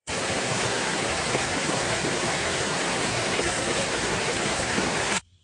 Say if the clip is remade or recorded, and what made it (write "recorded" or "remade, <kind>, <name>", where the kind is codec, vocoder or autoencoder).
remade, codec, SNAC